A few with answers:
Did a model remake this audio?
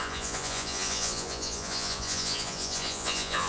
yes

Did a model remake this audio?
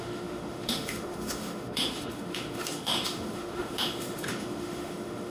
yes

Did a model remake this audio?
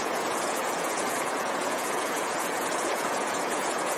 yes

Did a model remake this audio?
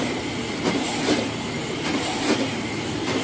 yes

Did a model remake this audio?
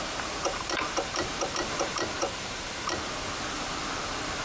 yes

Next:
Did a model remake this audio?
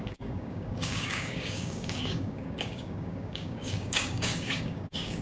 yes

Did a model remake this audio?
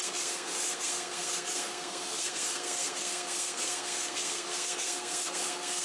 yes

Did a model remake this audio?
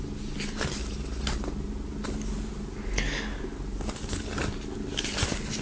no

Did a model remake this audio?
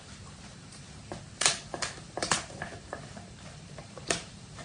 yes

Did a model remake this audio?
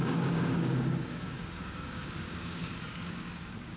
yes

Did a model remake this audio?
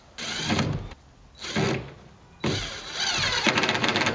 no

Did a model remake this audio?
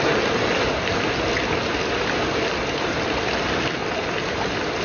no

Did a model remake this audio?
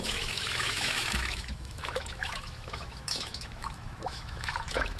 yes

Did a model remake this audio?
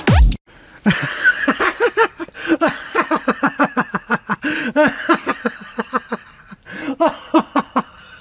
no